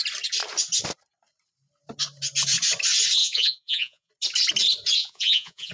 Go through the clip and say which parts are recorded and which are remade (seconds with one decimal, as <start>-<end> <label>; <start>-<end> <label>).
0.0-3.2 recorded; 3.2-4.1 remade; 4.1-5.0 recorded; 5.0-5.7 remade